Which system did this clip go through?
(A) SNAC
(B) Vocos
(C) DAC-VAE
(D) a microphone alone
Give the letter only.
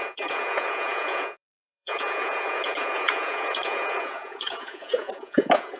B